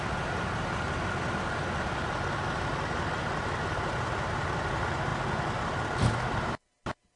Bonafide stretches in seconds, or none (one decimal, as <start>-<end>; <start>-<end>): 0.0-7.2